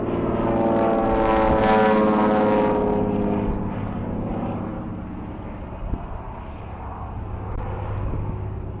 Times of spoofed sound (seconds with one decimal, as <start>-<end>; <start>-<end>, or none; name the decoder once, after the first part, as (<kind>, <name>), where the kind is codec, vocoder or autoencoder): none